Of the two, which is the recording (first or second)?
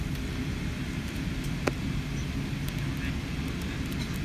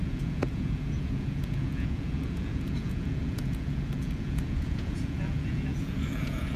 first